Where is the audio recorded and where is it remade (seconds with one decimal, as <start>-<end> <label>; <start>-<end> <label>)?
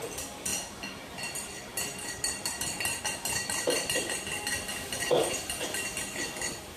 0.0-6.8 recorded